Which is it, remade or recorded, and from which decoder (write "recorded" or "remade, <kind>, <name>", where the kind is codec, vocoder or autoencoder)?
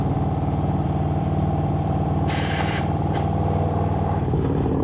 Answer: remade, vocoder, BigVGAN v2